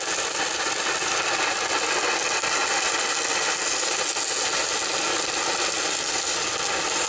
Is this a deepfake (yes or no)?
no